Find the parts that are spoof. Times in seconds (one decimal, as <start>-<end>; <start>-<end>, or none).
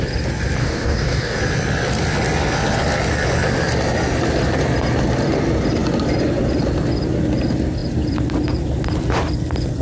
0.6-1.4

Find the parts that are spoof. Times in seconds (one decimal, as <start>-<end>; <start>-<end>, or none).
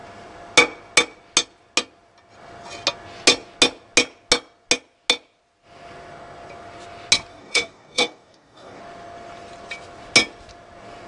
7.3-8.8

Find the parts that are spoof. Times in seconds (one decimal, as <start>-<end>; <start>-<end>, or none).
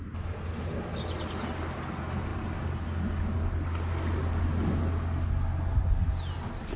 none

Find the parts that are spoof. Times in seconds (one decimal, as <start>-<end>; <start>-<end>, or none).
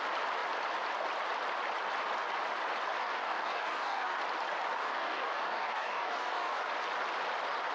3.0-4.2; 4.8-6.6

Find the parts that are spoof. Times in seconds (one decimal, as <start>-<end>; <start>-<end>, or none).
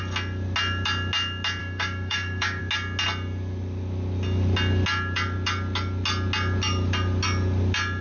1.6-2.6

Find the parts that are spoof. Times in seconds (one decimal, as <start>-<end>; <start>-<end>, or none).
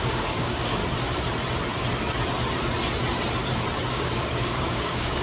0.0-0.8; 3.9-5.2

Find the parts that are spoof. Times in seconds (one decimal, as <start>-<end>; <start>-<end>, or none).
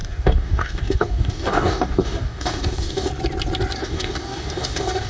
0.0-3.1; 3.8-5.1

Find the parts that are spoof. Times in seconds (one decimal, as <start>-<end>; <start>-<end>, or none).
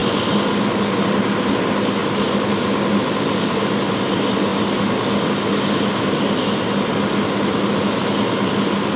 none